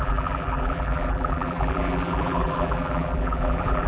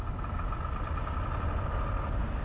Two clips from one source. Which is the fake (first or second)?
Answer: first